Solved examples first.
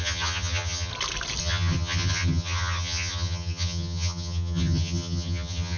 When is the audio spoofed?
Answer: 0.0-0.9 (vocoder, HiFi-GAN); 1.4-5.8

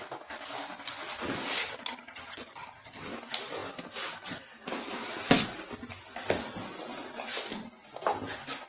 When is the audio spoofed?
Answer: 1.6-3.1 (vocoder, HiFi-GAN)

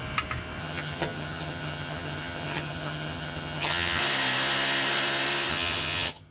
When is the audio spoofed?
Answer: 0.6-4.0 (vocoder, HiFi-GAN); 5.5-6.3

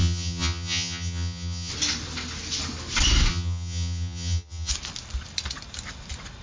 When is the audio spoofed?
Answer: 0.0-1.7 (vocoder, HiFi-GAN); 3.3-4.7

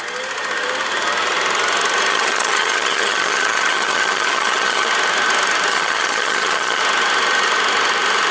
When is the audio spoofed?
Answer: 2.1-4.9 (vocoder, HiFi-GAN); 5.7-6.8